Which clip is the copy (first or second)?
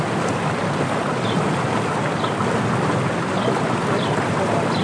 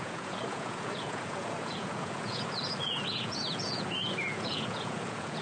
second